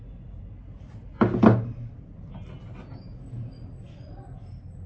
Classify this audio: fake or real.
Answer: real